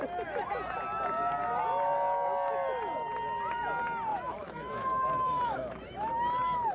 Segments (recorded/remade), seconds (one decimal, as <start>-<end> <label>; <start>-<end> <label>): 0.0-4.1 recorded; 4.1-6.1 remade; 6.1-6.7 recorded